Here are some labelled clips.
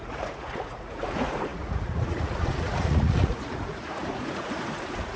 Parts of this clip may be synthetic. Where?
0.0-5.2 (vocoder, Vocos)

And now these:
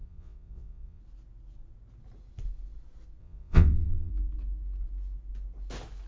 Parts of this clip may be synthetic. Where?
0.0-1.0 (vocoder, WaveNeXt); 3.2-4.1